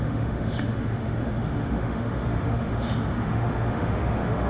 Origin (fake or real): fake